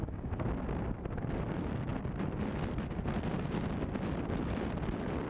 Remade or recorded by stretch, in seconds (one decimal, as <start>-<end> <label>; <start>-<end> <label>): 0.0-5.3 recorded